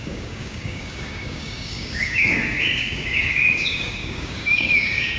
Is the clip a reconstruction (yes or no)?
yes